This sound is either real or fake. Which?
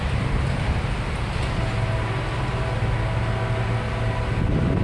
real